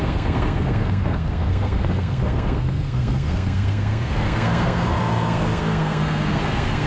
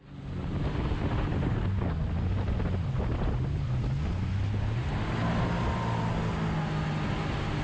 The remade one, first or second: first